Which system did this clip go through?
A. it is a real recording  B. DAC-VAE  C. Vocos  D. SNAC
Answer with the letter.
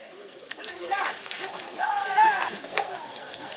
D